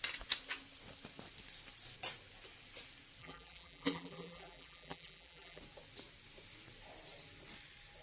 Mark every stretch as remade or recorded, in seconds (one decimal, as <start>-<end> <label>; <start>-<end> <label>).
0.0-3.2 recorded; 3.2-5.6 remade; 5.6-8.0 recorded